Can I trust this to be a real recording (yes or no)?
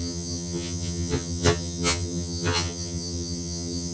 no